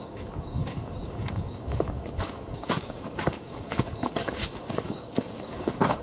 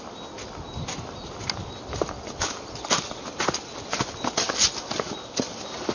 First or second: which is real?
second